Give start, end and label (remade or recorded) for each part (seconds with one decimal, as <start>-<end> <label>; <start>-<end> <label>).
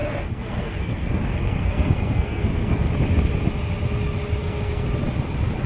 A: 0.0-2.9 remade; 2.9-4.4 recorded; 4.4-4.9 remade; 4.9-5.7 recorded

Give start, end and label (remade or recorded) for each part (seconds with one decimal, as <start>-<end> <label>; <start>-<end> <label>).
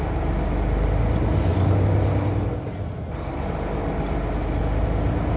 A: 0.0-5.4 recorded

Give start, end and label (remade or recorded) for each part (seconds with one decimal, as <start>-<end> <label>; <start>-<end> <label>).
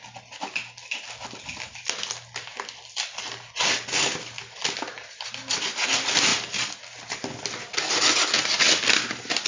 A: 0.0-9.5 recorded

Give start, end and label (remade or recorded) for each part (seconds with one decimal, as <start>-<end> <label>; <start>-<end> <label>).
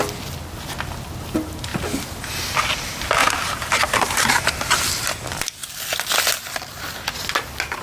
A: 0.0-3.2 recorded; 3.2-4.5 remade; 4.5-7.8 recorded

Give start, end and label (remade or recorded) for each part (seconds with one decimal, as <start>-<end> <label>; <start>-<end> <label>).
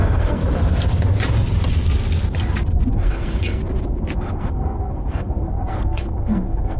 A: 0.0-0.4 remade; 0.4-2.9 recorded; 2.9-3.6 remade; 3.6-4.2 recorded; 4.2-6.8 remade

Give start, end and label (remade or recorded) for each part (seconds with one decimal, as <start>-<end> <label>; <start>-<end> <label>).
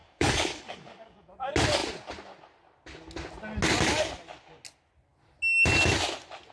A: 0.0-1.3 remade; 1.3-6.5 recorded